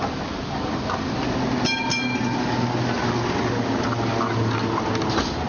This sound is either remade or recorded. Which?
recorded